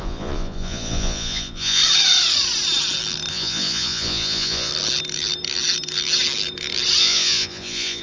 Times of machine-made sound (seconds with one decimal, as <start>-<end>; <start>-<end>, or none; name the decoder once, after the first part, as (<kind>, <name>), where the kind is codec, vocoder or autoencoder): 0.0-1.8 (vocoder, Vocos); 3.3-4.7; 7.0-8.0